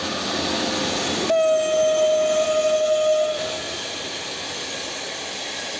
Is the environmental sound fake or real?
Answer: real